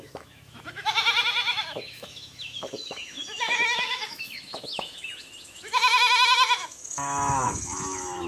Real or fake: fake